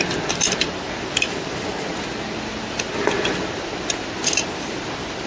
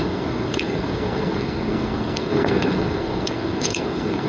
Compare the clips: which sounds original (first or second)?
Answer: first